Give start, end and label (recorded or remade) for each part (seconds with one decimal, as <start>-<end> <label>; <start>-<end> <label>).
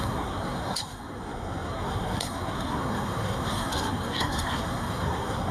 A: 0.0-5.5 remade